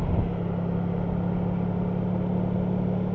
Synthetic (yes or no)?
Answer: no